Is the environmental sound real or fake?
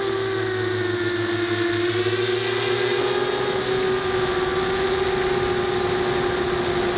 real